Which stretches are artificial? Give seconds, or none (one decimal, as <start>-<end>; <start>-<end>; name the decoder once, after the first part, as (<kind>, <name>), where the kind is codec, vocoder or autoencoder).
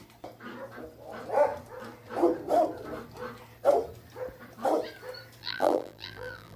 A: 5.4-6.6 (vocoder, BigVGAN v2)